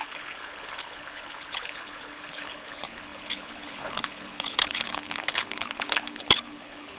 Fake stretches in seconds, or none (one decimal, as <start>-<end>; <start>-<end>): 0.0-7.0